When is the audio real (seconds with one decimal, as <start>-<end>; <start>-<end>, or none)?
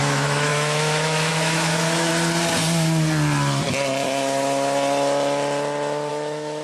2.1-6.1